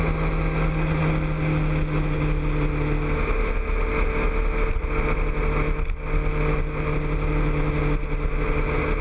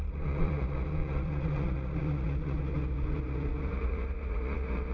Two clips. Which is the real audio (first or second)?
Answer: first